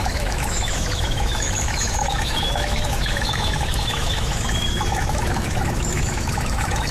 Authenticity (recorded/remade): remade